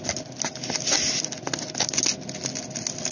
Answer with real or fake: real